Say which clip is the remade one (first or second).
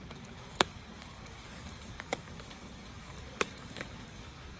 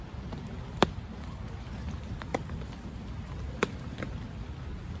first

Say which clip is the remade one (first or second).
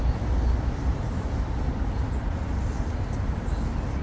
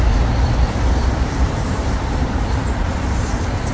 second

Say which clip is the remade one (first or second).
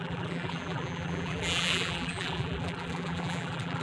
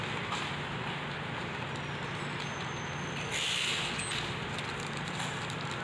first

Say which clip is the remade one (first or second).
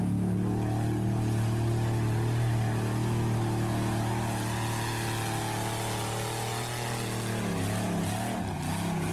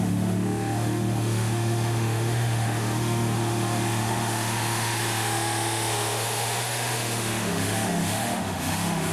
second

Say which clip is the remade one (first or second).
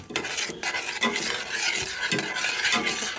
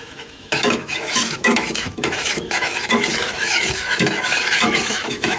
second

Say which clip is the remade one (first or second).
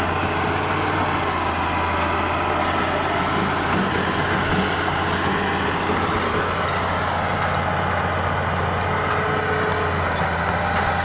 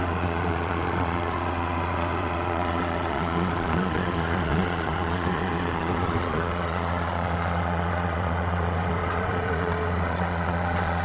second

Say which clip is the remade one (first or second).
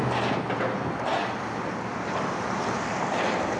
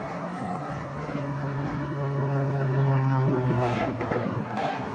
second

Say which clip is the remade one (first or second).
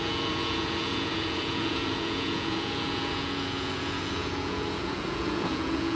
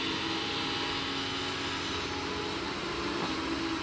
first